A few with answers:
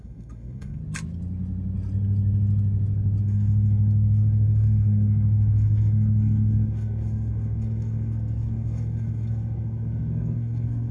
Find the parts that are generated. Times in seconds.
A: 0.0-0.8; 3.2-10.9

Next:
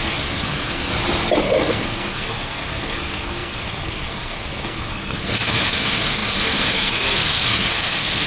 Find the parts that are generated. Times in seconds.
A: 0.0-0.9; 1.4-8.3

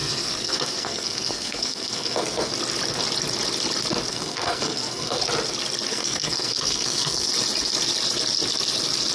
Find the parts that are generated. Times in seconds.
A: 0.0-2.5; 4.1-5.2; 5.9-7.3

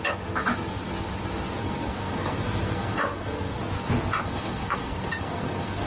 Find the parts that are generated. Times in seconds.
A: 1.6-3.6; 4.2-5.9

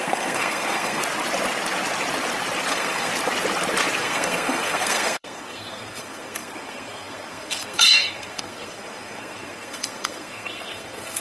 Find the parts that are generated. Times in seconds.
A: 0.0-1.0; 2.7-3.1; 4.0-11.2

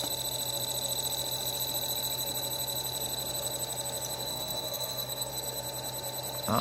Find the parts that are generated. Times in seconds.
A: 4.3-5.3